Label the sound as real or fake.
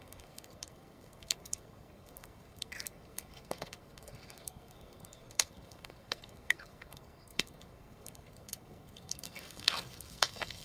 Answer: fake